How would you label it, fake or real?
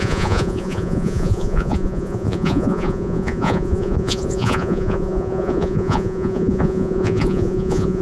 fake